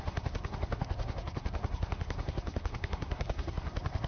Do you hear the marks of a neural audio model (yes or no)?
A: yes